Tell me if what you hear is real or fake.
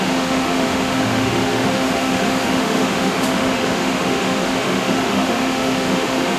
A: fake